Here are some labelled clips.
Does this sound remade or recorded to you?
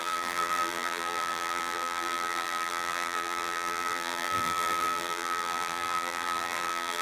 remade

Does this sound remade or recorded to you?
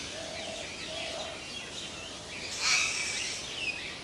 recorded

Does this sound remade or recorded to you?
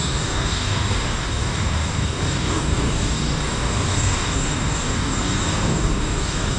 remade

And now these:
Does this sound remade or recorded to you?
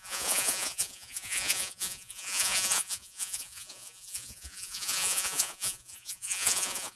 remade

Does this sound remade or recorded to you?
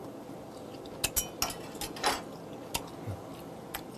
recorded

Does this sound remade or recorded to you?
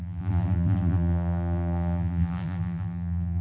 remade